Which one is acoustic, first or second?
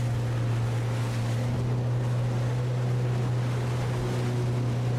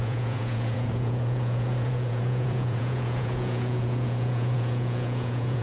first